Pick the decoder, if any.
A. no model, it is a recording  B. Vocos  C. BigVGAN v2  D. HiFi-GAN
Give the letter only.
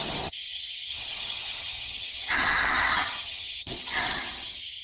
D